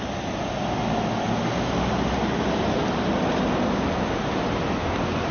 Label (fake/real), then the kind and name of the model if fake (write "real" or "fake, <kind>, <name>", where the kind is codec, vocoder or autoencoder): real